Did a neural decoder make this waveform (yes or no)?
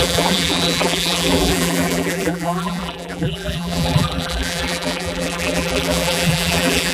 yes